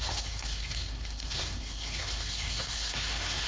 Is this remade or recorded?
remade